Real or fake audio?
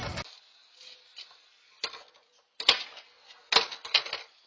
real